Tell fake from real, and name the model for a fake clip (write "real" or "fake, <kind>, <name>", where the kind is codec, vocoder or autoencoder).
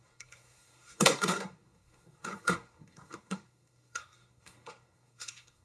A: fake, codec, SNAC